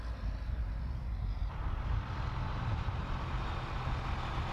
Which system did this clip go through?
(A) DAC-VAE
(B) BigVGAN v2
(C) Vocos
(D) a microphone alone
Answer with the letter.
D